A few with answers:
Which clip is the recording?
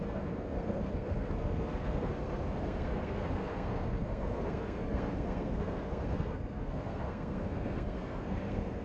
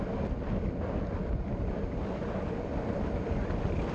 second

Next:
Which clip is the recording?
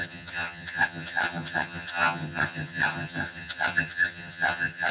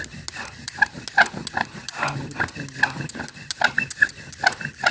second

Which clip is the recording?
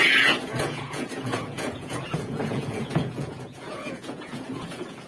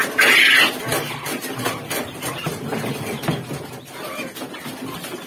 second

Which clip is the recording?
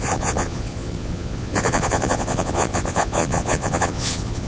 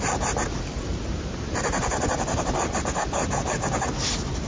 second